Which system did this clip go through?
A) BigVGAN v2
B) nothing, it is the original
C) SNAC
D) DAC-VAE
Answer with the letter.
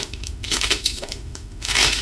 D